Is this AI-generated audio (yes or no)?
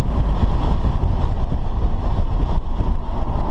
no